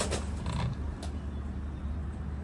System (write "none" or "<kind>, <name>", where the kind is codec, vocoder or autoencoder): none